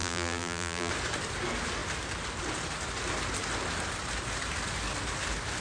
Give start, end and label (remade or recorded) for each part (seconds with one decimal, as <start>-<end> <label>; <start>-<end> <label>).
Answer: 0.0-0.9 remade; 0.9-5.6 recorded